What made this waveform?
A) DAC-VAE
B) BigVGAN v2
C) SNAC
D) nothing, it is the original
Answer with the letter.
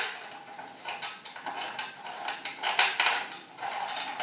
D